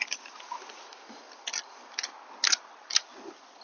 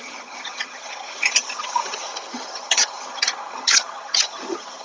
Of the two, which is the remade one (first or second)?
second